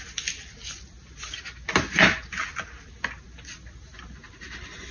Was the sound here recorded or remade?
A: recorded